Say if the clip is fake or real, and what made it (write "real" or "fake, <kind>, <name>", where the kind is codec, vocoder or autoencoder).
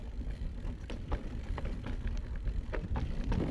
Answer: fake, vocoder, BigVGAN v2